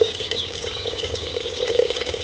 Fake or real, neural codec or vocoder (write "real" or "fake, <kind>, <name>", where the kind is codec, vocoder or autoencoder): fake, codec, DAC